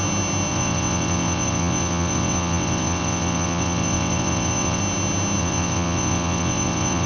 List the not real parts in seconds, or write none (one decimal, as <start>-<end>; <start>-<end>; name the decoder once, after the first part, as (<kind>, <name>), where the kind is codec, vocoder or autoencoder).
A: 0.5-4.8 (vocoder, WaveNeXt); 5.4-7.1